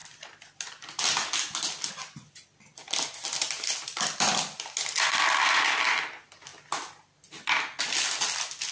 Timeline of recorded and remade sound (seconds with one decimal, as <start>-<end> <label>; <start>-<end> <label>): 0.0-8.7 recorded